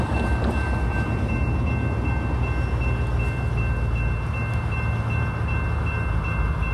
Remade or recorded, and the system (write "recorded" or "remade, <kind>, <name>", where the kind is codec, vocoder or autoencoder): recorded